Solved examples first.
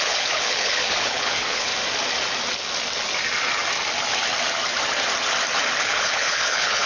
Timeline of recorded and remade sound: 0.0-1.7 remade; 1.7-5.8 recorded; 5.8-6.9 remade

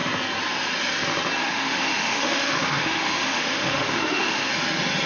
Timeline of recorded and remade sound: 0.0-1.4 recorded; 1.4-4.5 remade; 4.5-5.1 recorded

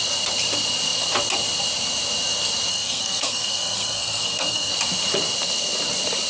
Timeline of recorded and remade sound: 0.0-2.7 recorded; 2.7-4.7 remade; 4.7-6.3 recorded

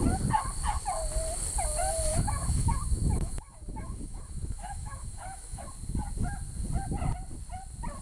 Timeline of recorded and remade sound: 0.0-2.1 recorded; 2.1-5.6 remade; 5.6-8.0 recorded

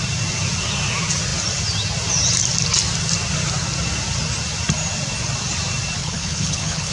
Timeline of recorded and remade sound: 0.0-6.0 recorded; 6.0-6.9 remade